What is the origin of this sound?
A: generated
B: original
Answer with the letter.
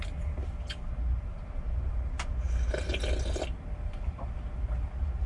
B